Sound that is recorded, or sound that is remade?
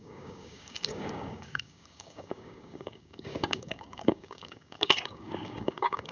remade